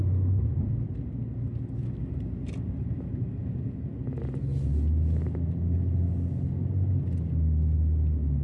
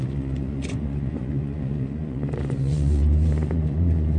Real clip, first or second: first